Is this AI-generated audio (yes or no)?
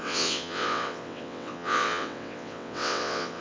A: yes